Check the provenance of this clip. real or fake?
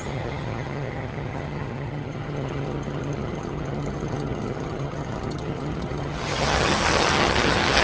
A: fake